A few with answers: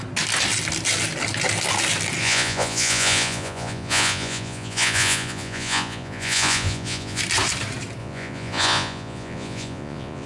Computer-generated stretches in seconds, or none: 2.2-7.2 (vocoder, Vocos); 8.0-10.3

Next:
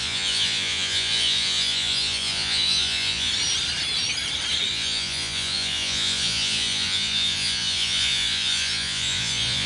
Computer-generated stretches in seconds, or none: 0.0-3.3 (vocoder, Vocos); 4.7-9.7